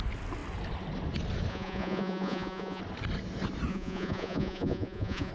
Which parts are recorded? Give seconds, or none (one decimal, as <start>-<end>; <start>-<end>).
0.0-1.5; 2.8-3.7